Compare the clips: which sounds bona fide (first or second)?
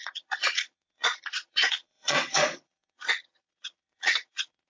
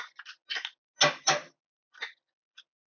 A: second